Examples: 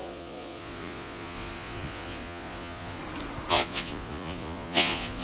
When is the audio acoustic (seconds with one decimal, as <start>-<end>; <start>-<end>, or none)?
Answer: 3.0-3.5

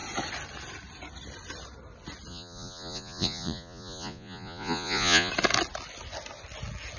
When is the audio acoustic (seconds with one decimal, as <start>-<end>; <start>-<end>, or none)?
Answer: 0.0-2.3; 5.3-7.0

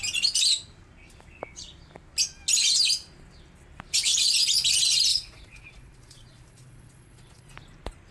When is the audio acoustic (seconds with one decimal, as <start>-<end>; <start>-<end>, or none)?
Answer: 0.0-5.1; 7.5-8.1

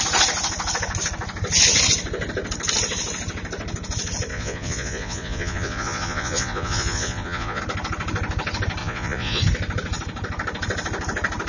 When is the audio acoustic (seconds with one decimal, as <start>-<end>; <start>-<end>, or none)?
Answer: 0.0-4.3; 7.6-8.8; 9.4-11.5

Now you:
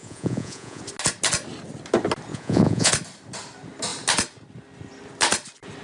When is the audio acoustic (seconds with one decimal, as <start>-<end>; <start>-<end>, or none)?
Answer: 0.8-2.3; 2.9-5.8

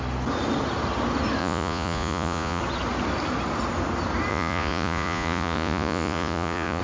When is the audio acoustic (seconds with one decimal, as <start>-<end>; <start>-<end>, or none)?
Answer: 0.0-1.4; 2.6-4.3